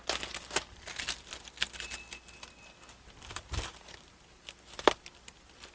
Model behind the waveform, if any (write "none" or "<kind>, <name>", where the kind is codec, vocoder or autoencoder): vocoder, BigVGAN v2